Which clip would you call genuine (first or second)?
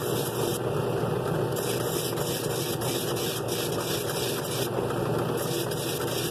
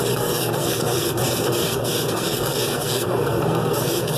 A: first